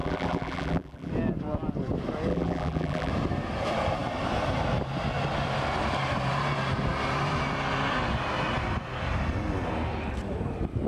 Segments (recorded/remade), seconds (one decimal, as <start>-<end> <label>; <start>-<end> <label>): 0.0-1.1 remade; 1.1-2.3 recorded; 2.3-3.1 remade; 3.1-10.9 recorded